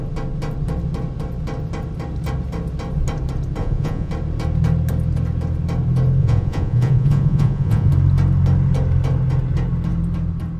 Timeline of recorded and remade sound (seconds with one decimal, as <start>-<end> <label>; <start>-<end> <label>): 0.0-3.6 recorded; 3.6-4.1 remade; 4.1-6.2 recorded; 6.2-7.9 remade; 7.9-10.6 recorded